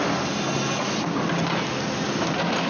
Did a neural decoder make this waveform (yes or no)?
no